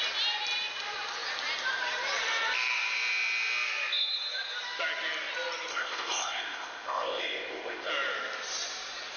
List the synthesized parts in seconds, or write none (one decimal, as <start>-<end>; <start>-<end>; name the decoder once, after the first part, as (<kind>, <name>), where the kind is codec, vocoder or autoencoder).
5.7-7.9 (codec, ZipCodec)